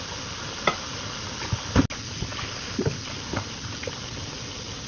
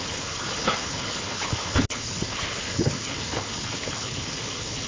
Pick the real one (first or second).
first